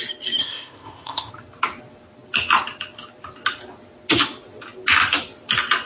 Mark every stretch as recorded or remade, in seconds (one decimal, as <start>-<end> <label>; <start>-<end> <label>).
0.0-0.4 recorded; 0.4-1.3 remade; 1.3-5.9 recorded

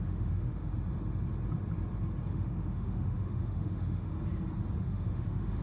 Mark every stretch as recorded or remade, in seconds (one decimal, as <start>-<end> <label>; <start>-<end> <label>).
0.0-0.7 remade; 0.7-2.3 recorded; 2.3-4.1 remade; 4.1-4.8 recorded; 4.8-5.6 remade

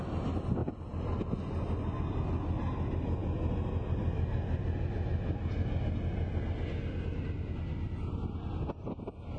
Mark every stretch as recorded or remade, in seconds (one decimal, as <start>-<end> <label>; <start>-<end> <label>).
0.0-9.4 recorded